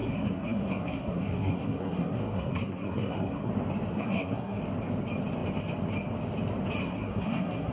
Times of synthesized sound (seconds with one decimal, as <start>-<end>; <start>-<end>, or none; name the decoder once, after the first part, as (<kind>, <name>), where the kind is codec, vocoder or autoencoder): 0.0-3.5 (codec, SNAC); 3.9-4.6; 6.8-7.7